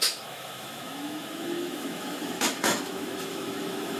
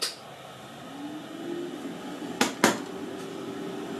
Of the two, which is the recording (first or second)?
second